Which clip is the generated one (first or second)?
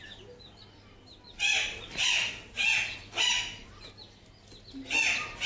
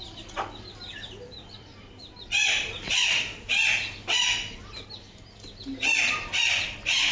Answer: second